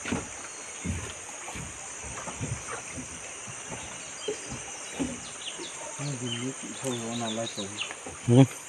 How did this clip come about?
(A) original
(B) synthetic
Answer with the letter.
A